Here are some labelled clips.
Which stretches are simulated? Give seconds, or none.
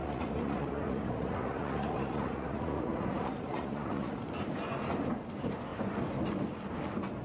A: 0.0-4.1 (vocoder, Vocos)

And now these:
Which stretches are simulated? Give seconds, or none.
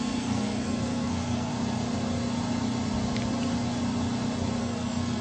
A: 0.0-1.5 (codec, SNAC); 4.6-5.2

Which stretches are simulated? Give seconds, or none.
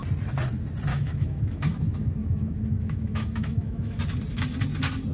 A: 0.9-4.0 (autoencoder, DAC-VAE)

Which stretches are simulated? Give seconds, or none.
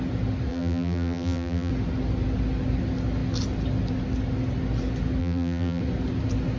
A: 0.5-1.7 (vocoder, BigVGAN v2); 5.2-5.8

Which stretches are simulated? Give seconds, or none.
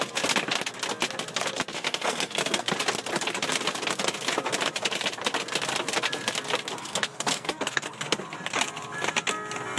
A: 1.7-2.7 (codec, SNAC); 6.8-8.2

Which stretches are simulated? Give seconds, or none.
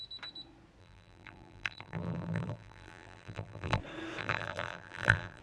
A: 0.8-3.8 (vocoder, BigVGAN v2); 4.2-5.4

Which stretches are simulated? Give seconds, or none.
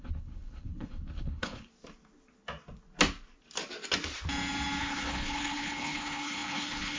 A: 0.0-1.7 (codec, HILCodec); 4.8-7.0